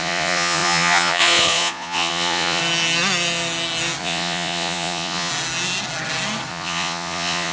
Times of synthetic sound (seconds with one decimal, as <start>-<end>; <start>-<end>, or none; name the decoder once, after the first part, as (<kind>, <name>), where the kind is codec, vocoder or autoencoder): 0.0-2.6 (vocoder, Vocos); 4.0-5.3; 6.5-7.5